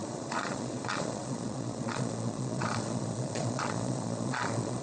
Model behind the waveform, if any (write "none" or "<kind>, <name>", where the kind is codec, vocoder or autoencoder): vocoder, Vocos